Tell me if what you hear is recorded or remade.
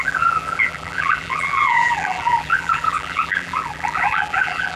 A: remade